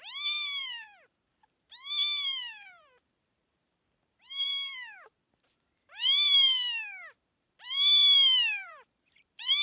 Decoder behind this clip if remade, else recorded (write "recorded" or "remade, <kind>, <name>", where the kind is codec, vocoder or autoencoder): remade, vocoder, BigVGAN v2